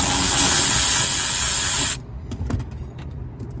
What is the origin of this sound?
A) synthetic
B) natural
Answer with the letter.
B